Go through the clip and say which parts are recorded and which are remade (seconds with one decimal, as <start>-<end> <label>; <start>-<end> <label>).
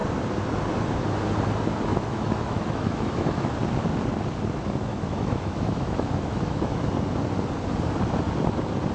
0.0-1.9 recorded; 1.9-3.5 remade; 3.5-4.9 recorded; 4.9-6.8 remade; 6.8-8.9 recorded